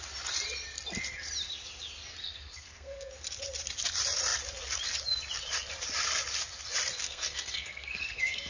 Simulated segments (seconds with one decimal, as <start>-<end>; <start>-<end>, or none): 2.2-3.1; 7.0-8.5